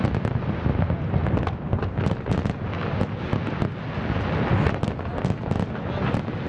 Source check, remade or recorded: recorded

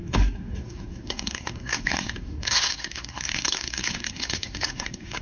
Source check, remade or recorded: remade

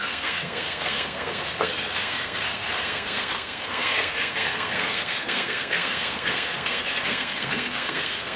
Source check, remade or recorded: remade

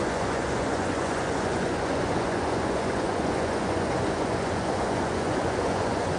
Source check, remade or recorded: remade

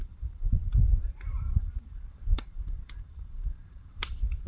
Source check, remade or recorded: remade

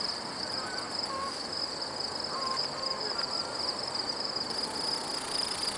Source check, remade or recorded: recorded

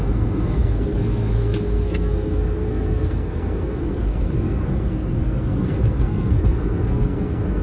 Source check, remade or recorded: remade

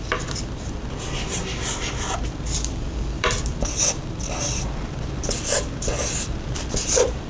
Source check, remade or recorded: remade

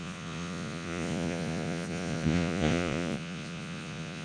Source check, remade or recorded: remade